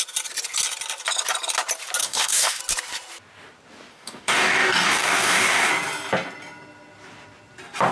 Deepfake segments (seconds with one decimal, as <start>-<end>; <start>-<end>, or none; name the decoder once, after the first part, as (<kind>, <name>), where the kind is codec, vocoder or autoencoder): 2.0-2.6 (codec, DAC); 3.9-5.7